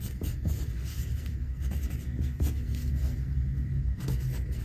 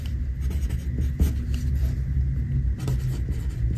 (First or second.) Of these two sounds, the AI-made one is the first